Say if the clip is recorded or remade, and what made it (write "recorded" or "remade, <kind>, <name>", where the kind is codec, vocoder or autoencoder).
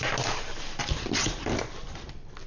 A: recorded